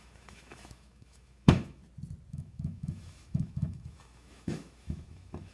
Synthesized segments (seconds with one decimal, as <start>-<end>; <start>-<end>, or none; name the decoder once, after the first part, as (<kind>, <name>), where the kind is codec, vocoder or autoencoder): 0.0-1.8 (autoencoder, DAC-VAE); 2.3-5.5